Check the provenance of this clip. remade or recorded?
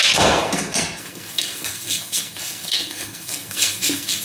remade